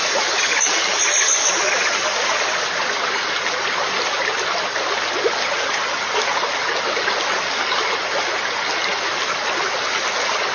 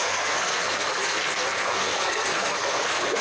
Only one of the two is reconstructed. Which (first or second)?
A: second